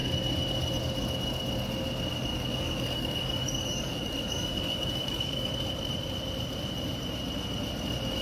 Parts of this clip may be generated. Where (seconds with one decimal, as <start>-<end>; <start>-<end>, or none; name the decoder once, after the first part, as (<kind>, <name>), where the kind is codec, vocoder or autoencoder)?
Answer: 2.3-5.5 (codec, DAC)